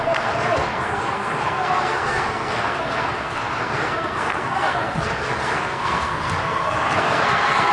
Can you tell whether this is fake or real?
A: fake